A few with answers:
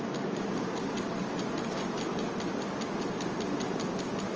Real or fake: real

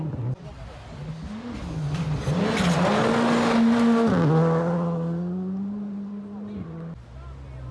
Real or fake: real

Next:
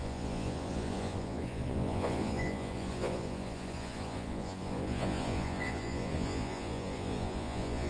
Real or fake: fake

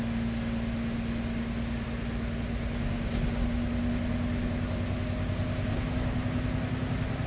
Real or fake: real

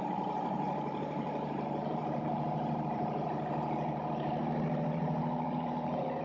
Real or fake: fake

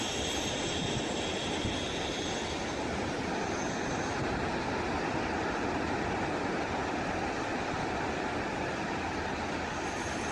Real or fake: real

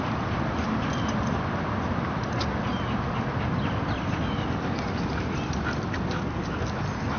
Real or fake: real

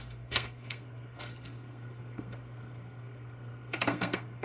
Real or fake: fake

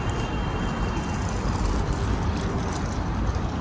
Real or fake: real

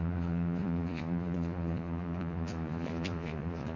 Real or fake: fake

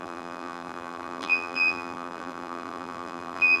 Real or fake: fake